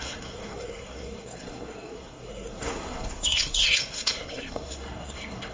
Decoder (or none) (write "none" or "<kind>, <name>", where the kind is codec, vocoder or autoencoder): codec, SNAC